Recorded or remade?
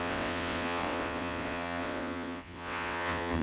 remade